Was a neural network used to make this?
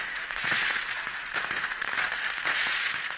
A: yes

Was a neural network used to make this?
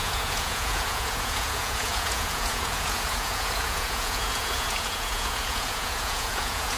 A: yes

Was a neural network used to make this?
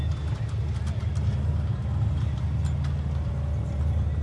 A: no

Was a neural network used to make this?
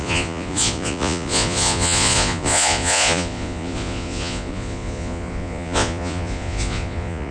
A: yes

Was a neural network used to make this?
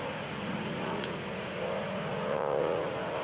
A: yes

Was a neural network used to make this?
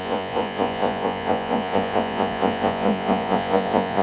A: yes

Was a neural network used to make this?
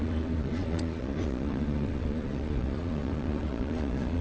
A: yes